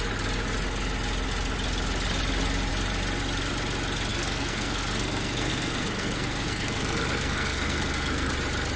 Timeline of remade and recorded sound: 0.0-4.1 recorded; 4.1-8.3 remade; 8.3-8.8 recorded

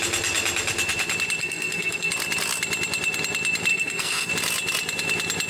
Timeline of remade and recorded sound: 0.0-1.4 recorded; 1.4-2.1 remade; 2.1-3.7 recorded; 3.7-4.3 remade; 4.3-5.5 recorded

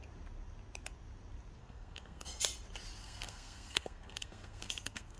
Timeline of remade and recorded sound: 0.0-1.6 recorded; 1.6-2.4 remade; 2.4-3.0 recorded; 3.0-5.2 remade

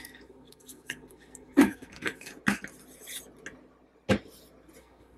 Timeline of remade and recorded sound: 0.0-2.3 remade; 2.3-4.8 recorded; 4.8-5.2 remade